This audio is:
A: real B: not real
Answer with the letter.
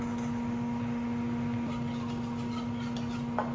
A